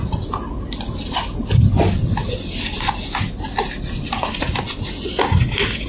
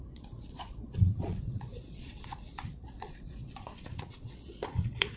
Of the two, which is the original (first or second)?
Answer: first